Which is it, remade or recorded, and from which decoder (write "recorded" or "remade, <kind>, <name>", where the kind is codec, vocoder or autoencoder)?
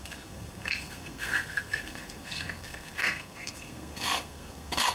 remade, codec, SNAC